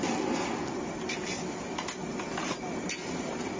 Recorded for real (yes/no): yes